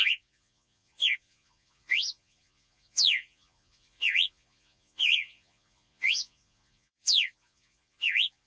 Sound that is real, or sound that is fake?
fake